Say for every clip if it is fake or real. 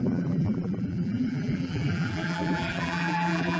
fake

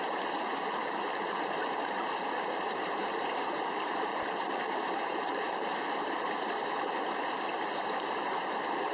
fake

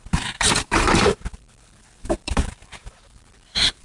fake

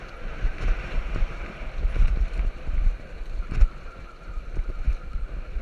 fake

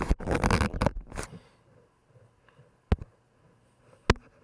real